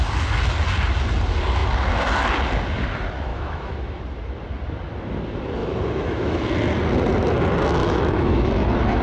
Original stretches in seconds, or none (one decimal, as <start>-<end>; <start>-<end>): 0.0-3.3; 4.0-5.6; 6.5-7.8; 8.5-9.0